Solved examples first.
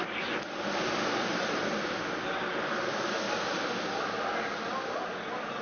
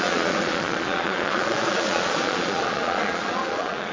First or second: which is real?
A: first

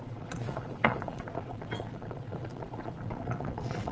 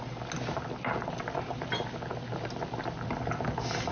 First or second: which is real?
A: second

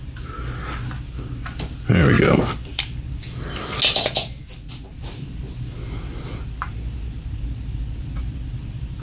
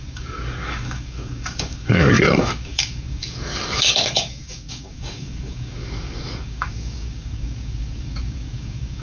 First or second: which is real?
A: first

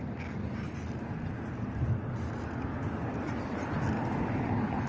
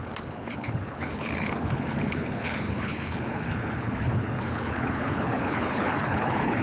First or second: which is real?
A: first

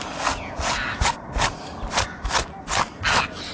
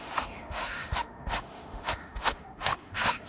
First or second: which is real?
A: first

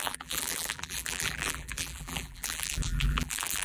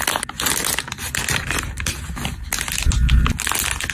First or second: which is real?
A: second